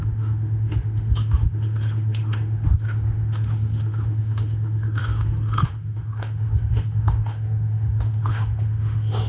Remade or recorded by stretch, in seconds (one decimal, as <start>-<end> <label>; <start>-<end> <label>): 0.0-9.3 remade